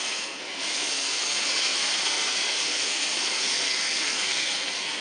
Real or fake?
fake